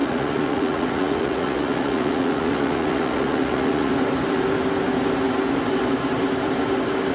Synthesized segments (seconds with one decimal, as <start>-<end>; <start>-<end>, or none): 0.0-3.9